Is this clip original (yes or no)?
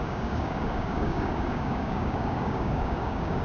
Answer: no